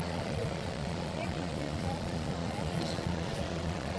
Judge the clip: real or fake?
fake